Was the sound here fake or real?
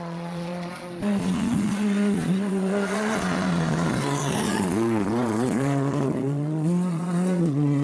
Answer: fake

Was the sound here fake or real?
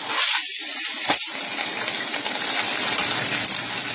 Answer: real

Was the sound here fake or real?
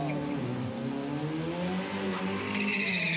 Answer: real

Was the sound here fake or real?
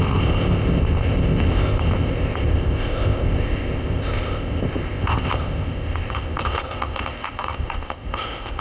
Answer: fake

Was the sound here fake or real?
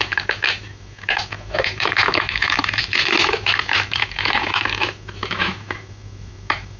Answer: fake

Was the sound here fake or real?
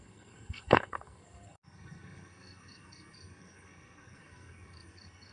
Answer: fake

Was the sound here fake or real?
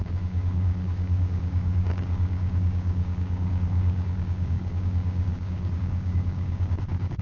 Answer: fake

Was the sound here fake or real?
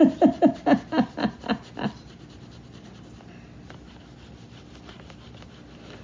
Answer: real